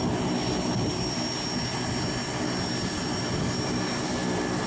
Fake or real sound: real